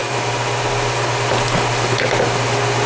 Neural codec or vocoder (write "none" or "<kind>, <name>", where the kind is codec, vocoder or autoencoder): none